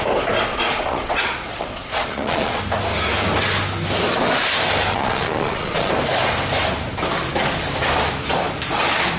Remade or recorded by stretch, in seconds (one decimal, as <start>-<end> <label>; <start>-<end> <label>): 0.0-0.5 recorded; 0.5-2.6 remade; 2.6-4.9 recorded; 4.9-5.9 remade; 5.9-9.2 recorded